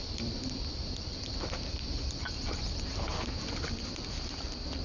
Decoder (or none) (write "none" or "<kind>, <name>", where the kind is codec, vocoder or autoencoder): vocoder, BigVGAN v2